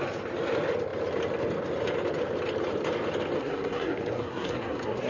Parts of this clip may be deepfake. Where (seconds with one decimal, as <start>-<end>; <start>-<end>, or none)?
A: 3.4-5.1